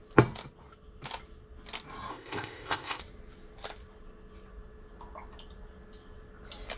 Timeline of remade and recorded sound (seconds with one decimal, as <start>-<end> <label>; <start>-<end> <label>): 0.0-2.1 recorded; 2.1-3.0 remade; 3.0-6.8 recorded